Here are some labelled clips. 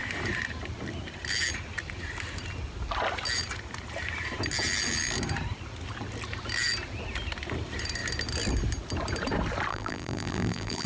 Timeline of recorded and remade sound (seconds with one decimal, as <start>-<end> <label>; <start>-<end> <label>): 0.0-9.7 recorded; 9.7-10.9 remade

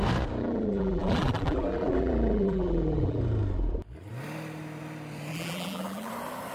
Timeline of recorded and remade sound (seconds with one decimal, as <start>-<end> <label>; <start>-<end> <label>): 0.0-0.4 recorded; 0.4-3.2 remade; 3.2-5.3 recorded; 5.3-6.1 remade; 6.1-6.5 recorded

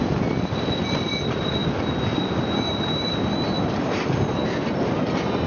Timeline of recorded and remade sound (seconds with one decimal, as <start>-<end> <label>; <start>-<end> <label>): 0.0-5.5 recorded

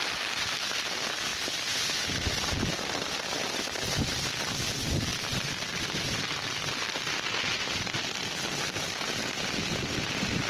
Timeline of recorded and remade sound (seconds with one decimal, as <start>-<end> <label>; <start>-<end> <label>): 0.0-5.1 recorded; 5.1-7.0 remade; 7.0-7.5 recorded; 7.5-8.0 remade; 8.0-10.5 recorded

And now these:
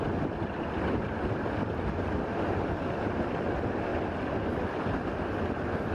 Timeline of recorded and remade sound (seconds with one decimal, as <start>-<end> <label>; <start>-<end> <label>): 0.0-5.9 recorded

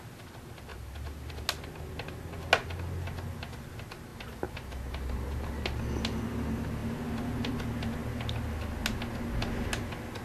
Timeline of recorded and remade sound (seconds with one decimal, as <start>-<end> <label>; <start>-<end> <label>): 0.0-0.7 recorded; 0.7-1.3 remade; 1.3-4.1 recorded; 4.1-5.6 remade; 5.6-10.2 recorded

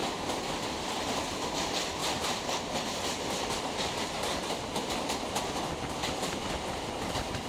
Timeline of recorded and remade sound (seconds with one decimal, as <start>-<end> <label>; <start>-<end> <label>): 0.0-2.0 recorded; 2.0-6.5 remade; 6.5-7.5 recorded

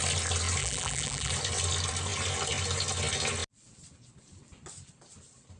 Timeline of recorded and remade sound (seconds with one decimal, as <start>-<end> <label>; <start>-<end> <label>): 0.0-0.6 recorded; 0.6-1.3 remade; 1.3-5.6 recorded